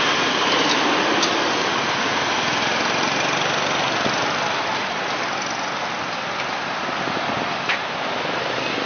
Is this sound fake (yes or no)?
no